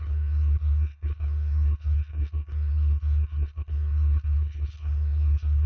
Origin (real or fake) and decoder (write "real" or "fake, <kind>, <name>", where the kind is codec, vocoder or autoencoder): fake, codec, HILCodec